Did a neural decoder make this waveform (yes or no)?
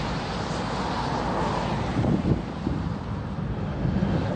no